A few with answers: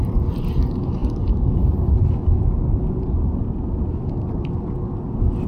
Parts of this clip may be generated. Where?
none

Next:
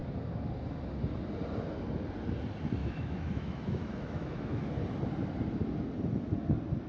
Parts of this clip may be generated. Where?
2.8-4.7 (autoencoder, DAC-VAE)

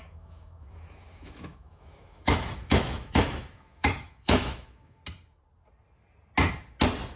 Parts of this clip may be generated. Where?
0.0-5.0 (autoencoder, DAC-VAE)